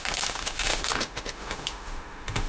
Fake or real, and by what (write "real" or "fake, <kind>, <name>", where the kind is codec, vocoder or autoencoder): fake, autoencoder, DAC-VAE